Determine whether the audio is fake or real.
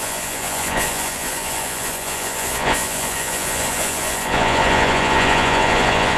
fake